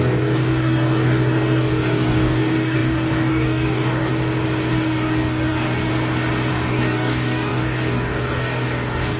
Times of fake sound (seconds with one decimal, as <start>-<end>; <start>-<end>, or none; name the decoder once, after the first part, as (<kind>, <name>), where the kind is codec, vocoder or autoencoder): 0.0-4.1 (codec, DAC); 4.7-5.9; 6.5-9.2